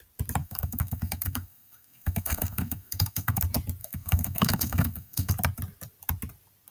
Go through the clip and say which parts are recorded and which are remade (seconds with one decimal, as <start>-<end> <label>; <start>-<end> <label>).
0.0-0.4 recorded; 0.4-3.4 remade; 3.4-3.8 recorded; 3.8-5.3 remade; 5.3-6.7 recorded